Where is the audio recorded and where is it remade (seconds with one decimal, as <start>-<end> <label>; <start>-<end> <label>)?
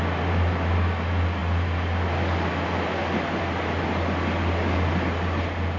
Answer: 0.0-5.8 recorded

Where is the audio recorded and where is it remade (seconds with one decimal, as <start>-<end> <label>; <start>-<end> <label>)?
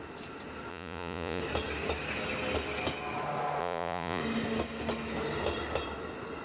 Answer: 0.0-0.7 recorded; 0.7-1.4 remade; 1.4-3.6 recorded; 3.6-4.2 remade; 4.2-6.4 recorded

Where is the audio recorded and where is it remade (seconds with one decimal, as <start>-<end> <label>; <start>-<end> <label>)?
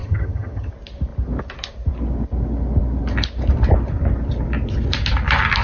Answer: 0.0-0.7 remade; 0.7-5.6 recorded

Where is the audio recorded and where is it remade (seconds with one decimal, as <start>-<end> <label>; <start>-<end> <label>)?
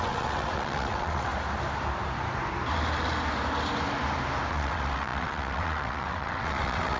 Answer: 0.0-1.3 remade; 1.3-4.5 recorded; 4.5-7.0 remade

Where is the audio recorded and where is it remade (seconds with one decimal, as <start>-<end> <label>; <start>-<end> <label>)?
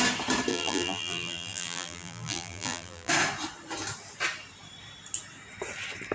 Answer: 0.0-0.5 recorded; 0.5-3.1 remade; 3.1-6.1 recorded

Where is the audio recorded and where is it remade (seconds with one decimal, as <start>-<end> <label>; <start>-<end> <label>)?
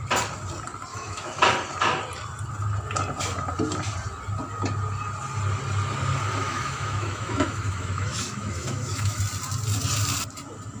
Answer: 0.0-0.9 recorded; 0.9-1.4 remade; 1.4-6.4 recorded; 6.4-9.2 remade; 9.2-10.8 recorded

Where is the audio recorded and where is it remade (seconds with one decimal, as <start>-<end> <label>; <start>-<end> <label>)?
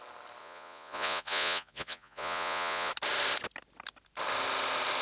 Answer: 0.0-0.4 recorded; 0.4-2.9 remade; 2.9-5.0 recorded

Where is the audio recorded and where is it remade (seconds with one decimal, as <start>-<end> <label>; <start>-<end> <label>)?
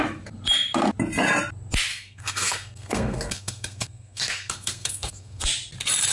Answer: 0.0-1.9 recorded; 1.9-5.4 remade; 5.4-6.1 recorded